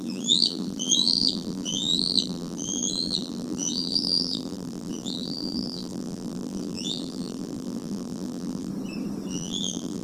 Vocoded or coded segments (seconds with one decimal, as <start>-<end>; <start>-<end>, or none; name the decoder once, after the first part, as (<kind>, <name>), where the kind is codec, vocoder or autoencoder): 0.0-8.7 (vocoder, BigVGAN v2); 9.3-10.0